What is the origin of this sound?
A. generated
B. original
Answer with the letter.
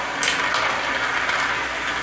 B